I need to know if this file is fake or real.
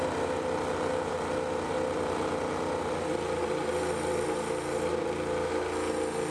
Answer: real